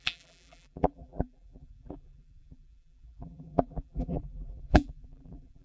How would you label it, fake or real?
fake